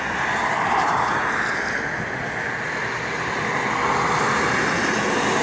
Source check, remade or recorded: recorded